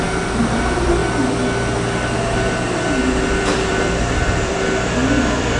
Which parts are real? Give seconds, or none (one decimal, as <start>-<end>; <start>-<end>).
1.0-3.3